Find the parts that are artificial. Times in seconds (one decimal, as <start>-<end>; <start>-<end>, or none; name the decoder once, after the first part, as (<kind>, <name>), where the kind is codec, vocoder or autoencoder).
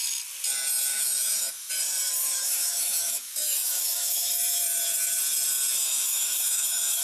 0.9-1.7 (autoencoder, DAC-VAE); 2.2-4.3; 5.9-7.0